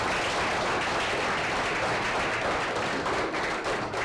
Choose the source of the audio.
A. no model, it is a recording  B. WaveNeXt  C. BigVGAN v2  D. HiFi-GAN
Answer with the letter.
A